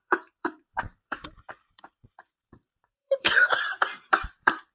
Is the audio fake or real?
fake